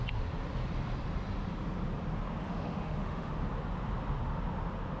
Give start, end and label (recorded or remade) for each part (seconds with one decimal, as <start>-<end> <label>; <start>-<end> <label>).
0.0-2.4 recorded; 2.4-3.3 remade; 3.3-5.0 recorded